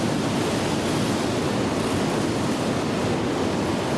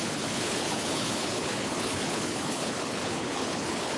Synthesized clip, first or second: second